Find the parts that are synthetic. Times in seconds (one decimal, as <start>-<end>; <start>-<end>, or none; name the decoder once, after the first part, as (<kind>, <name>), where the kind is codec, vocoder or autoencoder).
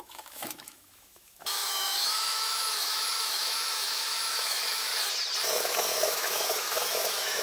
0.0-4.9 (autoencoder, DAC-VAE); 5.5-7.4